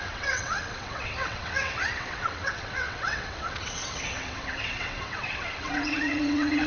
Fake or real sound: fake